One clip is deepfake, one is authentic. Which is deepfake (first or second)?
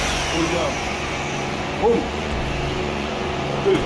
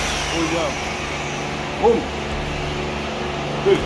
first